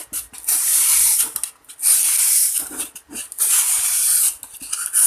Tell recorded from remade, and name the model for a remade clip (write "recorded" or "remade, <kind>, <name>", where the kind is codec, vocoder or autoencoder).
recorded